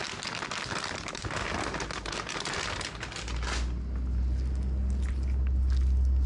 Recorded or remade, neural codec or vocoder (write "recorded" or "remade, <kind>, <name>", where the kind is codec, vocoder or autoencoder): recorded